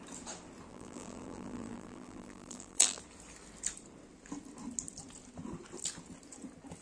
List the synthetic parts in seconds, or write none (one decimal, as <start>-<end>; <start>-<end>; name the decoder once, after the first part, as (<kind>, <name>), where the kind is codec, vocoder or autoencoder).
0.7-3.0 (vocoder, BigVGAN v2)

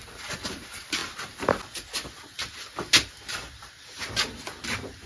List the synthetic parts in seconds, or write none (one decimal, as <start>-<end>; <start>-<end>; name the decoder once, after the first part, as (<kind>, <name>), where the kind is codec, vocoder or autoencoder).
none

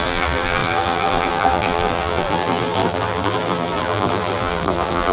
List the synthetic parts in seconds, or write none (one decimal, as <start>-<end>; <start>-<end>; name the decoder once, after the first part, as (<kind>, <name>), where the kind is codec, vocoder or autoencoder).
0.0-5.1 (vocoder, BigVGAN v2)

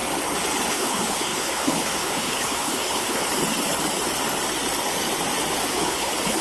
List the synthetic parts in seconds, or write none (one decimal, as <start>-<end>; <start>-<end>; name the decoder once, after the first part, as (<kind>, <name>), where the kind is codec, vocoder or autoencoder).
0.7-3.3 (codec, HILCodec); 5.7-6.4

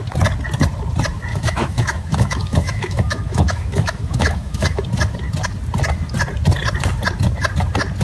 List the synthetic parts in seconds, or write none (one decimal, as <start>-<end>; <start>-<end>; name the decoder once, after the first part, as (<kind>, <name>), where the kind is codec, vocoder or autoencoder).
1.3-4.8 (autoencoder, DAC-VAE)

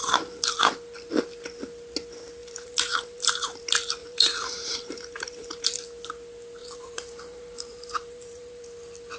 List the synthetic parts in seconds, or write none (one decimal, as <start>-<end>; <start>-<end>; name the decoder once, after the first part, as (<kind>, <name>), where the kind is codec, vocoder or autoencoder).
0.0-0.6 (vocoder, BigVGAN v2); 2.4-3.6; 4.0-5.8; 6.6-8.6

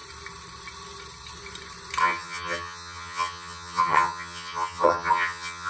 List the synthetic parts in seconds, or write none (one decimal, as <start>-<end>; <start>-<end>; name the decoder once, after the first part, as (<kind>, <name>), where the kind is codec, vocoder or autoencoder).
2.0-5.7 (vocoder, HiFi-GAN)

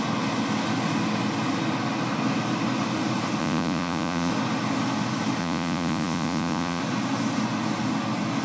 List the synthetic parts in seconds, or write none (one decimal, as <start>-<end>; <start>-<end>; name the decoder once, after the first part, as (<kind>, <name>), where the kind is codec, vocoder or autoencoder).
3.4-4.3 (vocoder, Vocos); 5.4-6.8